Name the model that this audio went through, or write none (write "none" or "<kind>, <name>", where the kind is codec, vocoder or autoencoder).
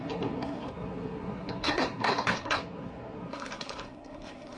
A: codec, SNAC